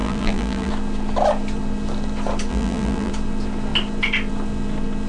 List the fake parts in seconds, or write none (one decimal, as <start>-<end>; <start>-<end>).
0.0-0.7; 2.5-3.1